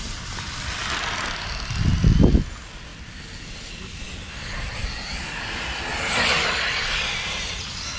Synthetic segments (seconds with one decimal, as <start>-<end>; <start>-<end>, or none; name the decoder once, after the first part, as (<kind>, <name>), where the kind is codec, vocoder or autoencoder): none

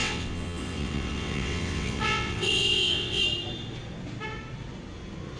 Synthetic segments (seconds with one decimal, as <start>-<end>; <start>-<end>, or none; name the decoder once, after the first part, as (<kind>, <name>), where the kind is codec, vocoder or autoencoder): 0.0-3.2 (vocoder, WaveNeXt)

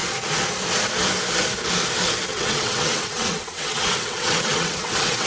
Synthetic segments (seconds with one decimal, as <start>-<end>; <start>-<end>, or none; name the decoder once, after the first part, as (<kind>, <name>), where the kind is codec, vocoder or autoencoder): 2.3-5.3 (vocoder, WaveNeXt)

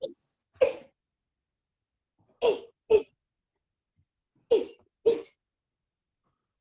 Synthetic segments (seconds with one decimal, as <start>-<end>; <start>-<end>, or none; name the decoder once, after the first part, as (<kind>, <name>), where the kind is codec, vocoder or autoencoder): none

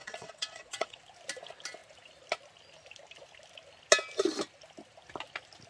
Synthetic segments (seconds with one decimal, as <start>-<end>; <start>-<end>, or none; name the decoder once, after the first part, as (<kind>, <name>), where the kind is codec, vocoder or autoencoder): 0.0-1.0 (vocoder, WaveNeXt)

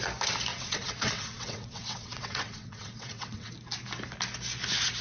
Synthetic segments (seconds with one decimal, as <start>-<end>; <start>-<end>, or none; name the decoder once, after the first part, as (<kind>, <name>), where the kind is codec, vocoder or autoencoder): 0.5-3.5 (vocoder, WaveNeXt)

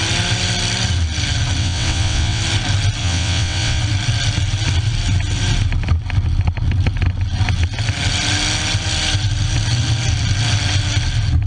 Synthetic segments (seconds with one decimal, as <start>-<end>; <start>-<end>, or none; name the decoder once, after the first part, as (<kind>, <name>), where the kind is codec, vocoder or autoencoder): 1.6-2.4 (vocoder, WaveNeXt); 3.0-3.8